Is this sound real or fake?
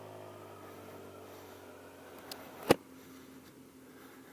real